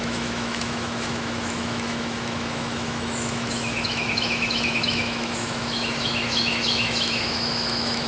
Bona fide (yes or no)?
no